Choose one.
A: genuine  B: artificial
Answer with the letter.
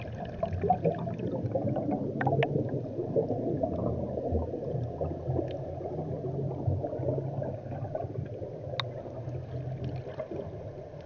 A